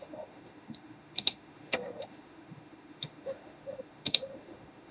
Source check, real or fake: fake